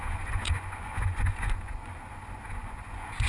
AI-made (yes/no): yes